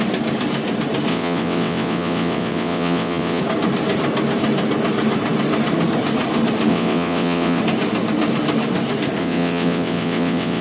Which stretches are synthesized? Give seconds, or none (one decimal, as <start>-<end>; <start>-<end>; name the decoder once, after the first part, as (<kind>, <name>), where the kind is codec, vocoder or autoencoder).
1.1-3.4 (vocoder, WaveNeXt); 6.7-7.6; 9.2-10.6